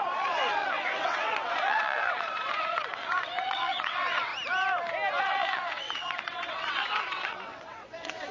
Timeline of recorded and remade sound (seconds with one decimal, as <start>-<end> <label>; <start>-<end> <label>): 0.0-4.3 remade; 4.3-5.2 recorded; 5.2-8.3 remade